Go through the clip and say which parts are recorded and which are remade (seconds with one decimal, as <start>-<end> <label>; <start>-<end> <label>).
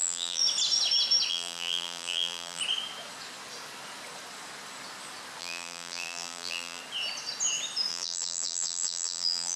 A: 0.0-0.4 remade; 0.4-1.3 recorded; 1.3-2.6 remade; 2.6-5.4 recorded; 5.4-6.8 remade; 6.8-7.9 recorded; 7.9-9.6 remade